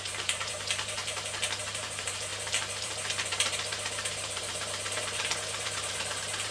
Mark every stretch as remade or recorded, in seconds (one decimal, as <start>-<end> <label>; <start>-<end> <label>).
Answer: 0.0-1.0 remade; 1.0-1.6 recorded; 1.6-6.5 remade